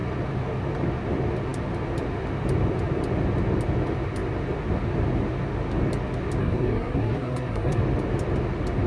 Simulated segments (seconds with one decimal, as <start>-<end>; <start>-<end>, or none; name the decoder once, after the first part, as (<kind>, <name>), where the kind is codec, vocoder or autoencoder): 6.4-7.8 (codec, SNAC)